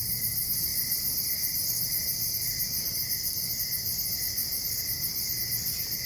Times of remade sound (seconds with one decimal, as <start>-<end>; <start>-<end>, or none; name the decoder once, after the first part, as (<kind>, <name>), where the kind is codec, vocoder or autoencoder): none